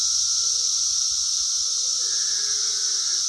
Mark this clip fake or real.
fake